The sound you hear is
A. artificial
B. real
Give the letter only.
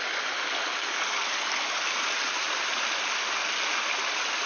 B